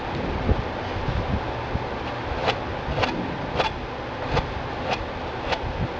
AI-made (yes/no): no